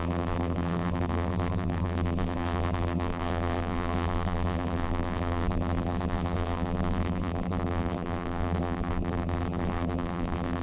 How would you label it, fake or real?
fake